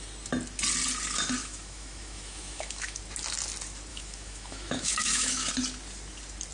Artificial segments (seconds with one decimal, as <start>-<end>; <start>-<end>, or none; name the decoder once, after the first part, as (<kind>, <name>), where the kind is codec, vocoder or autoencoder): 1.4-3.0 (autoencoder, DAC-VAE); 3.9-5.5